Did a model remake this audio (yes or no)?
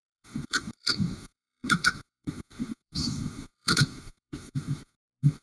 yes